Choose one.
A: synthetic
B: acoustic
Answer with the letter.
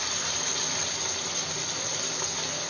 B